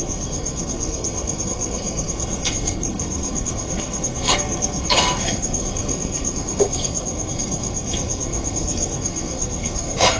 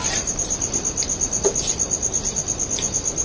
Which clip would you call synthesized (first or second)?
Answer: first